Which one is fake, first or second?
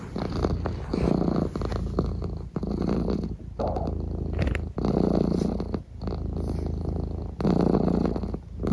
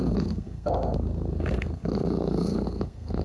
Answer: second